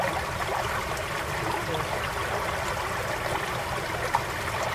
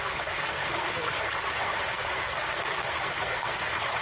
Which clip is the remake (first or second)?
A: second